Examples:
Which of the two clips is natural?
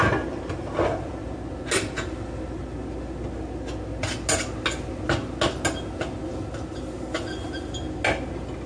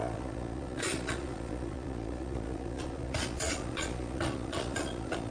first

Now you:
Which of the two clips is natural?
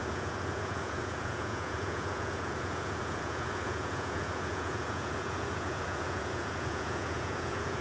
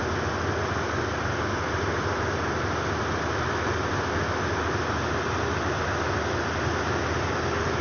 second